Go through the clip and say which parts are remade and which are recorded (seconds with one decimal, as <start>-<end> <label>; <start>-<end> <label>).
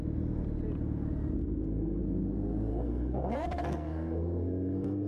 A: 0.0-1.4 recorded; 1.4-2.0 remade; 2.0-2.7 recorded; 2.7-5.1 remade